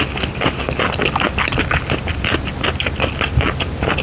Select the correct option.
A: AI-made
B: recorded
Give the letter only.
B